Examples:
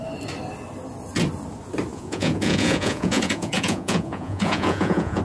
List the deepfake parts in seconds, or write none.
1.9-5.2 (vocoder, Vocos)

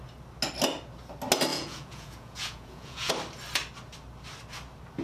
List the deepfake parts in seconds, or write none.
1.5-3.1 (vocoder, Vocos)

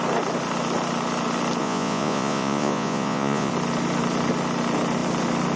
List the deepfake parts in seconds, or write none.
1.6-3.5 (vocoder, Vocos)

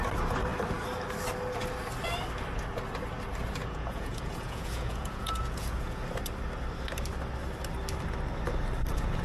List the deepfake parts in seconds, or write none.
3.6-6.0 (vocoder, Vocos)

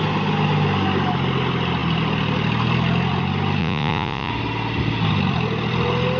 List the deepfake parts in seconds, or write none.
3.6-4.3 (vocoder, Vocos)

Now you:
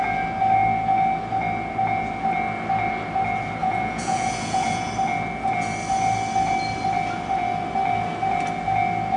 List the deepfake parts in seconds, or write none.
3.6-4.9 (vocoder, Vocos)